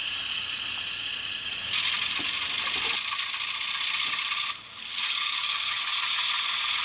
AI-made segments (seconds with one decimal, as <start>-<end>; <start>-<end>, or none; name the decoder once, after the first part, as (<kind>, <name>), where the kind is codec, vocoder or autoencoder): 4.8-5.8 (codec, DAC)